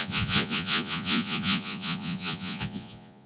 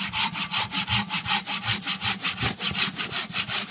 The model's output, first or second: first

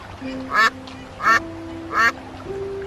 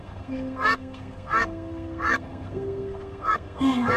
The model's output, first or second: second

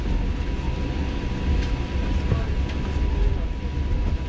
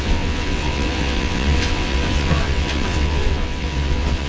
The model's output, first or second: second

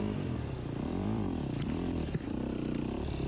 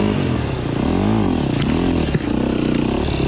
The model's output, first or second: first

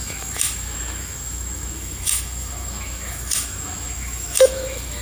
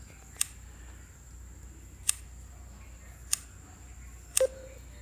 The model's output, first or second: first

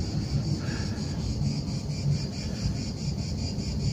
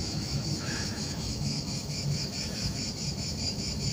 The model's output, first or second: second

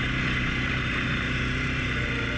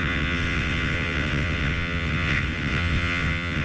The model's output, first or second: second